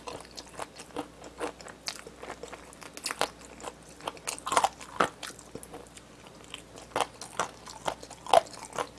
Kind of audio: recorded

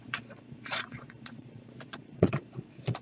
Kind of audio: remade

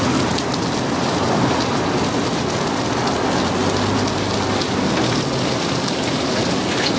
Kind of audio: recorded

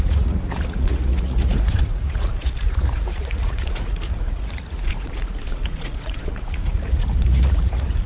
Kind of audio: remade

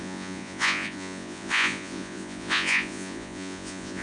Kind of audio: remade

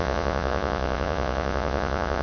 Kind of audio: remade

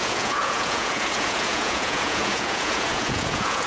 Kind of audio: remade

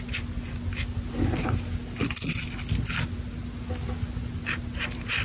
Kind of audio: recorded